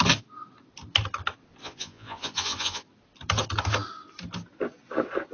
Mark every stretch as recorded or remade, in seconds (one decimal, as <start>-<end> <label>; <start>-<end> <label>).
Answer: 0.0-1.6 recorded; 1.6-2.8 remade; 2.8-5.3 recorded